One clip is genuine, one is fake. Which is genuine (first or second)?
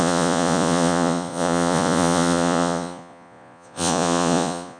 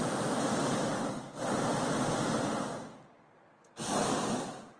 second